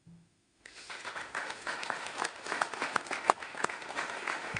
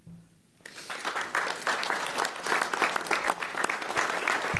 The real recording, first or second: second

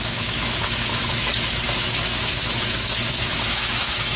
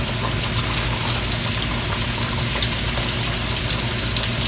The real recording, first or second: second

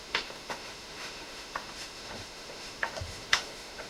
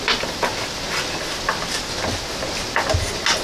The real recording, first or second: second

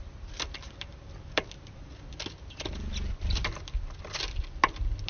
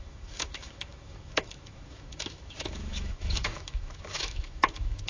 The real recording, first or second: first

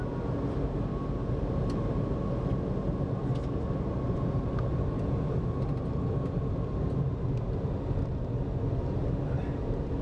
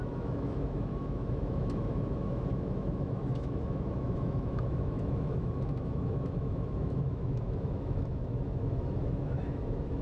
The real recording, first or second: first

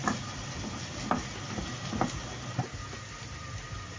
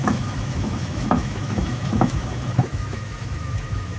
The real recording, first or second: first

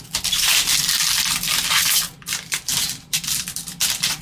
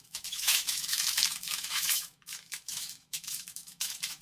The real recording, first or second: first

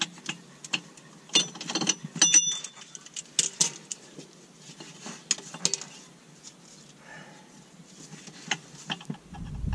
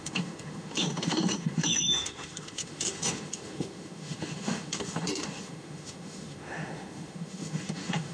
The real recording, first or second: first